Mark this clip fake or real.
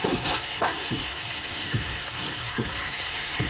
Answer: fake